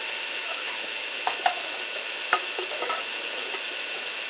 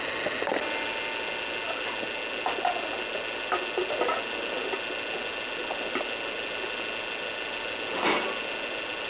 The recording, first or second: second